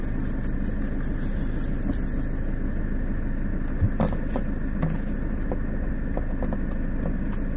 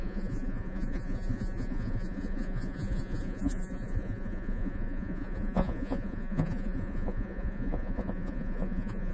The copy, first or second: second